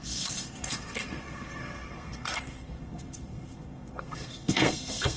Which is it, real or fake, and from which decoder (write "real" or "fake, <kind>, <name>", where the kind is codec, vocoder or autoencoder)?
fake, codec, SNAC